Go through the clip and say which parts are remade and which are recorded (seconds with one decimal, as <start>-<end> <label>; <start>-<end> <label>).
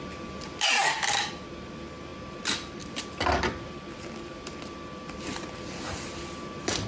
0.0-6.9 recorded